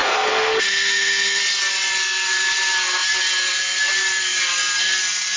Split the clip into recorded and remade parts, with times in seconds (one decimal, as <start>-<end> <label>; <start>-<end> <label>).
0.0-1.4 remade; 1.4-5.4 recorded